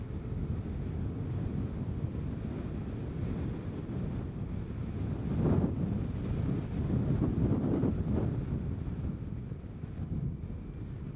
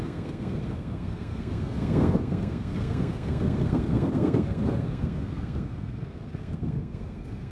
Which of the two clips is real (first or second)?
first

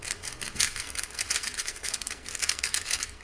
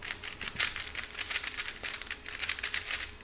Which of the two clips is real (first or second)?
second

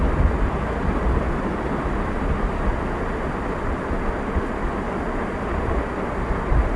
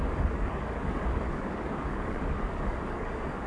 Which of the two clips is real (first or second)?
first